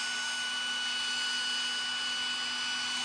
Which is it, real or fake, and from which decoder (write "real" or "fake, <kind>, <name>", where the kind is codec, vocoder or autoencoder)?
real